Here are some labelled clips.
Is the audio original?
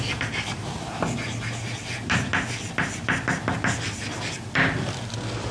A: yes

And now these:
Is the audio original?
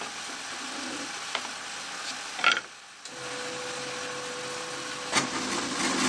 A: yes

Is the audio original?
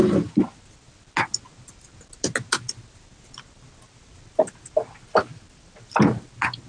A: yes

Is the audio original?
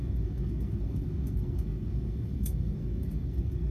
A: no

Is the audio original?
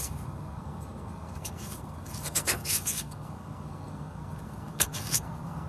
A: no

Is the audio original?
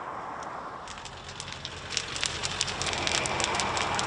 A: yes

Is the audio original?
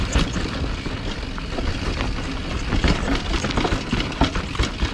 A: yes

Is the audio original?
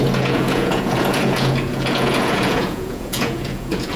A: no